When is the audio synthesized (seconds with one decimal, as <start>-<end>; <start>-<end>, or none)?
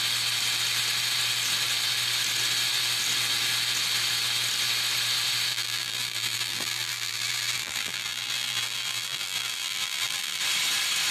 5.5-10.4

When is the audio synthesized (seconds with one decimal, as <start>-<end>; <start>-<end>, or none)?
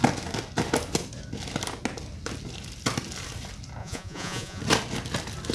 3.8-4.6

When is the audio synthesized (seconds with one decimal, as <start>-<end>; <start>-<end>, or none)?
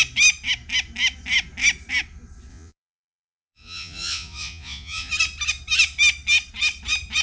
2.5-5.1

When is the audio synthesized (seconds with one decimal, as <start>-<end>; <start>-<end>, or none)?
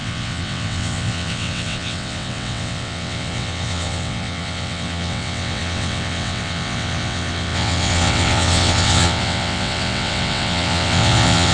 0.0-11.5